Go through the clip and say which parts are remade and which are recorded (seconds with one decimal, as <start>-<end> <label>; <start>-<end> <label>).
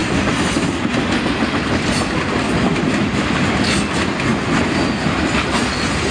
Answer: 0.0-6.1 recorded